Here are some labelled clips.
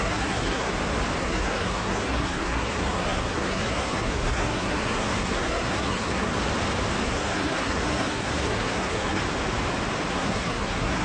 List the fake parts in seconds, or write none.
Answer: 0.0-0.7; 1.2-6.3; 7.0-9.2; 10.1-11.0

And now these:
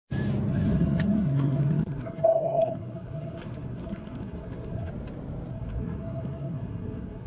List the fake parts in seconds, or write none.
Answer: 0.5-4.9; 5.5-7.3

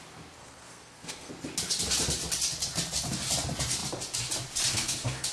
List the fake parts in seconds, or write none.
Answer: 0.4-1.3; 4.7-5.3

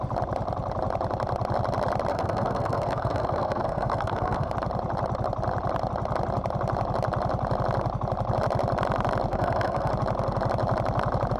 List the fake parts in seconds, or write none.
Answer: 2.1-4.5; 9.3-9.9

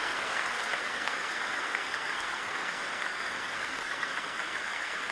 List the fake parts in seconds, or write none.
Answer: 0.0-5.1

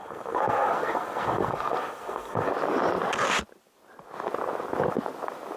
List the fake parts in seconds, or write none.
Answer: 0.0-2.5

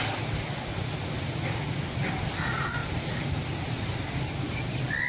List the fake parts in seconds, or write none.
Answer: none

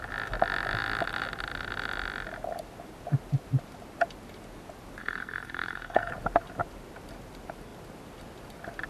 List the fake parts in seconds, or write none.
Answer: 5.0-6.1